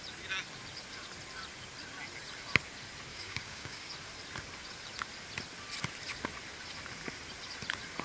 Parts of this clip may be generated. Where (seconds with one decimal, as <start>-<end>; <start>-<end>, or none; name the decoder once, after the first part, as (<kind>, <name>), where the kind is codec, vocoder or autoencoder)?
3.1-3.9 (codec, DAC)

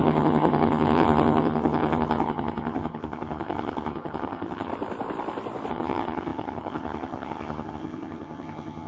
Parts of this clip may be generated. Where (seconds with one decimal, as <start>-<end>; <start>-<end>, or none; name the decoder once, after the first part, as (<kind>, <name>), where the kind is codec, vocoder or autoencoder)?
0.0-4.7 (vocoder, HiFi-GAN); 5.7-8.9